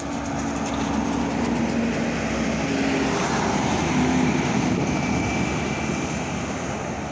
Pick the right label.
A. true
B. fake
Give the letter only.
A